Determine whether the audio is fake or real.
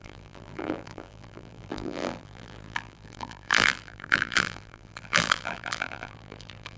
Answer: fake